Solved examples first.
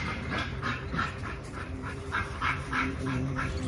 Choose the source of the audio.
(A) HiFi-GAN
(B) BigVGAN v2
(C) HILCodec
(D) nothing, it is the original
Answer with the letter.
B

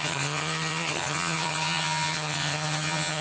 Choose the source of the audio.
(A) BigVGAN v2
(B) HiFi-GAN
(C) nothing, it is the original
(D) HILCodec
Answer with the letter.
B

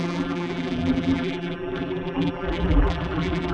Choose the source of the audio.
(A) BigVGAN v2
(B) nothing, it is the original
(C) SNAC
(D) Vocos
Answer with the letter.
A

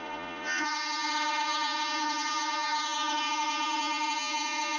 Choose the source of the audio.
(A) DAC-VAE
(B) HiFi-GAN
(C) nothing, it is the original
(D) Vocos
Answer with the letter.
D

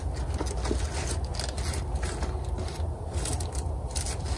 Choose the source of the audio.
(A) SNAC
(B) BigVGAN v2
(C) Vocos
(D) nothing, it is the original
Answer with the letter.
D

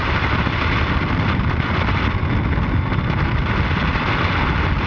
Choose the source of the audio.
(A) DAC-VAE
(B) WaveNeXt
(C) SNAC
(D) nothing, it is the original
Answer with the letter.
D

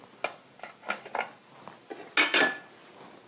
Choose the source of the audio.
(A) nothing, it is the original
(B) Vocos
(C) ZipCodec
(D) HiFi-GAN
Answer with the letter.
A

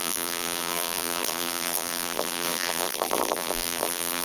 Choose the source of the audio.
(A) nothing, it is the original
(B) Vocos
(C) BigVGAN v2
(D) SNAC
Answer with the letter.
C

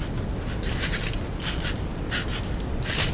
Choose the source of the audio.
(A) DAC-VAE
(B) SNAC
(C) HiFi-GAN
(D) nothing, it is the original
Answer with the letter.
D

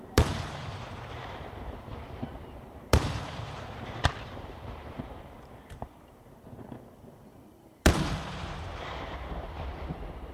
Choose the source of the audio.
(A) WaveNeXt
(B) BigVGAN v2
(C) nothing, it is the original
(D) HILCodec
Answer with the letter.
B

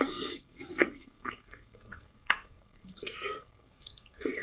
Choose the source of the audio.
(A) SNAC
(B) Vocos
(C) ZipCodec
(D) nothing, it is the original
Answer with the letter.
A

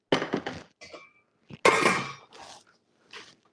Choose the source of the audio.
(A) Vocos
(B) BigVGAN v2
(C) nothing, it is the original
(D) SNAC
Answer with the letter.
C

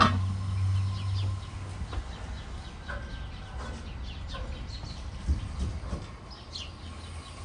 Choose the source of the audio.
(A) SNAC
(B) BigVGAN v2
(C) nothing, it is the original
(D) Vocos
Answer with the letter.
C